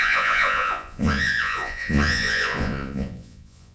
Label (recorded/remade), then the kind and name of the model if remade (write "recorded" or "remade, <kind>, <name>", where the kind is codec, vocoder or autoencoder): remade, vocoder, Vocos